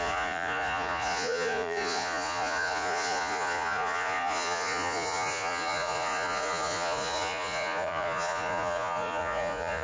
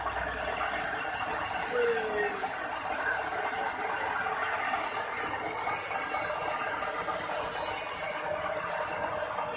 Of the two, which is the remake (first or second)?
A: first